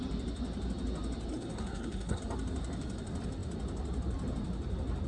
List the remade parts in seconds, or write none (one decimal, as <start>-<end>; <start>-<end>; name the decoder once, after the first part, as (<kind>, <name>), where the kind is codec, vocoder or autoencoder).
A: 1.3-2.2 (codec, SNAC)